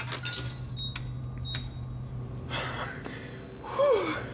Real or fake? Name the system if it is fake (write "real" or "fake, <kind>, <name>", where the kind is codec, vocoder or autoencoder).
real